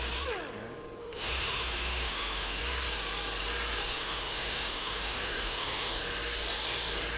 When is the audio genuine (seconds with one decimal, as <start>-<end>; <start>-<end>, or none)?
0.0-1.0; 2.6-3.9; 6.0-7.2